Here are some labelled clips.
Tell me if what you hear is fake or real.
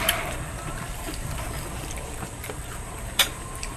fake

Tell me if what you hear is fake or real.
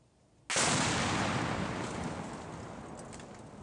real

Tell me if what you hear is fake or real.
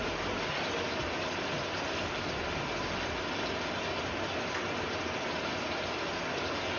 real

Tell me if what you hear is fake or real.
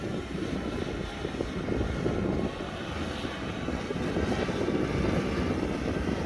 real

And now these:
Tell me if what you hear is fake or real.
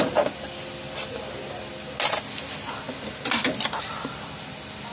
real